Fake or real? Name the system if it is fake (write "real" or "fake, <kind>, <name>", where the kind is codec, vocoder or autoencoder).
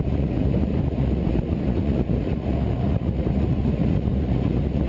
fake, vocoder, Vocos